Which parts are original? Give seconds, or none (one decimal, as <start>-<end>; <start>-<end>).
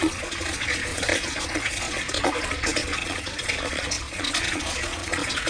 none